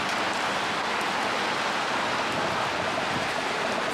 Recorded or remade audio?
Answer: recorded